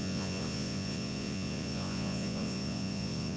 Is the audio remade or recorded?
remade